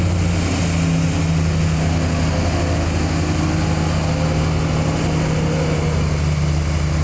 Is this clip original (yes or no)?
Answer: yes